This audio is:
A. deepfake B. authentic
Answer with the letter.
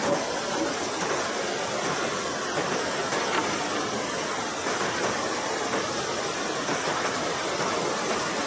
B